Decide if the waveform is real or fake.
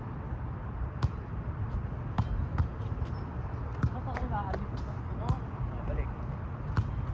real